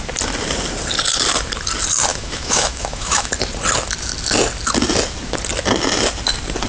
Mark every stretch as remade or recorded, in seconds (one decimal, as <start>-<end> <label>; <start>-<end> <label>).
0.0-2.1 recorded; 2.1-3.3 remade; 3.3-6.7 recorded